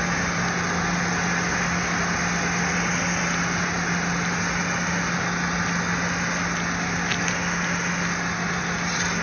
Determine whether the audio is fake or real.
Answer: real